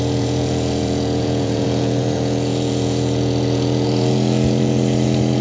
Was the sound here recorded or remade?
remade